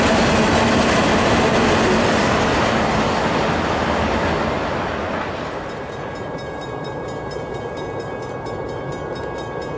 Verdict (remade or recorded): recorded